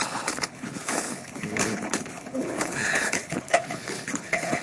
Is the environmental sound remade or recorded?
remade